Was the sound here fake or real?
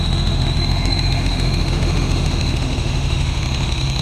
fake